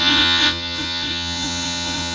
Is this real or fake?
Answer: fake